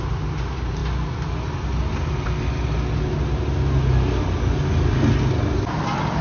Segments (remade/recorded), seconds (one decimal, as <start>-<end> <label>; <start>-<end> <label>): 0.0-6.2 recorded